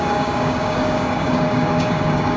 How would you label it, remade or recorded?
remade